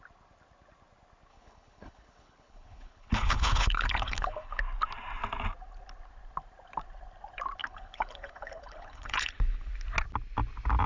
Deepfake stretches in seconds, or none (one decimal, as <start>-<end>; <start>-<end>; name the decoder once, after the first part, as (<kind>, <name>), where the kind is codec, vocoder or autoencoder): 1.3-4.6 (codec, HILCodec); 7.6-9.7